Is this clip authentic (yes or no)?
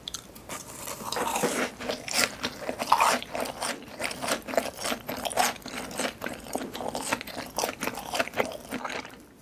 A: no